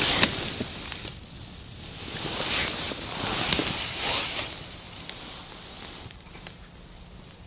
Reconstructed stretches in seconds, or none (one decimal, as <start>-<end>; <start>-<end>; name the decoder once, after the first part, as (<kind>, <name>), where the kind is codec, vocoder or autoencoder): none

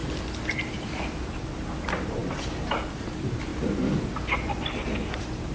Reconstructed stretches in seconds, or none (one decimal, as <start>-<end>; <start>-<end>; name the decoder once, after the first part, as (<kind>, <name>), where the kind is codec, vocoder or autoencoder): 0.7-2.2 (vocoder, BigVGAN v2); 3.0-3.5; 4.9-5.5

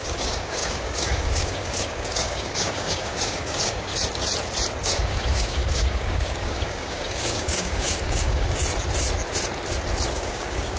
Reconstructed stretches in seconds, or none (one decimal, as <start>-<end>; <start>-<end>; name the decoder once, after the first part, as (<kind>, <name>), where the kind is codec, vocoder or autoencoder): 0.0-3.9 (codec, DAC); 4.8-8.6; 10.1-10.8

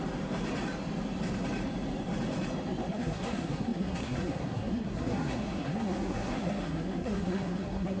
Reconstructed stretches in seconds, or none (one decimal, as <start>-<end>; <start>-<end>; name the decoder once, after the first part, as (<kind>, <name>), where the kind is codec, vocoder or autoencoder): 2.9-8.0 (codec, SNAC)

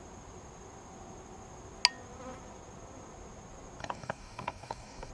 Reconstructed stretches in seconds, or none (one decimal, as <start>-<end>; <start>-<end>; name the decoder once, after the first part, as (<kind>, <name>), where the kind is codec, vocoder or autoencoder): 3.8-5.1 (codec, DAC)